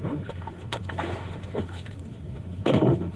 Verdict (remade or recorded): remade